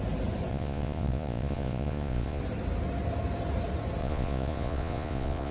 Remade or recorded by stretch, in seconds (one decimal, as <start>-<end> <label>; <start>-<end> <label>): 0.0-0.5 recorded; 0.5-2.4 remade; 2.4-4.0 recorded; 4.0-5.5 remade